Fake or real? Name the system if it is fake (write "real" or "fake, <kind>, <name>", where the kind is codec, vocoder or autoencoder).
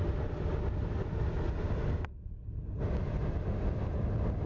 real